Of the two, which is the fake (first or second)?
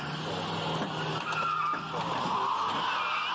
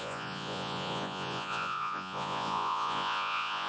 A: second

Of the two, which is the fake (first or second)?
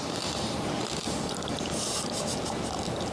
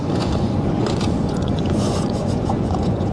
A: second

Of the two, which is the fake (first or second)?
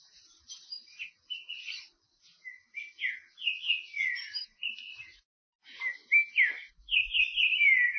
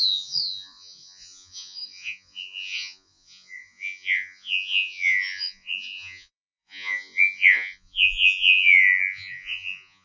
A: second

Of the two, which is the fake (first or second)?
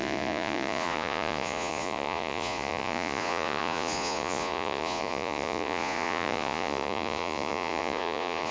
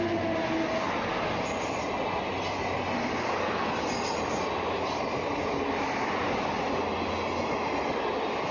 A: first